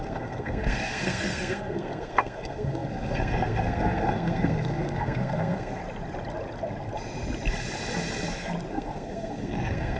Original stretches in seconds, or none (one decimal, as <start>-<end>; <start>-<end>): 5.8-8.7